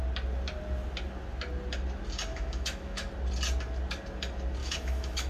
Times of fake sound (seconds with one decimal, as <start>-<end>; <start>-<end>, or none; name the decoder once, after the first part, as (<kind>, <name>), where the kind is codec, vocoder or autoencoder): 2.3-3.1 (autoencoder, DAC-VAE); 4.6-5.3